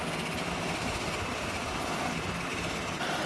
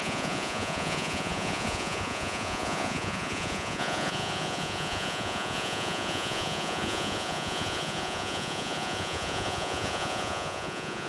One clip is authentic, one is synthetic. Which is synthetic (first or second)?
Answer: second